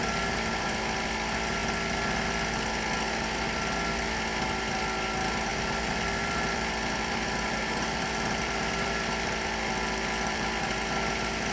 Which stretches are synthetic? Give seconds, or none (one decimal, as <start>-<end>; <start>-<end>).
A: 5.5-10.6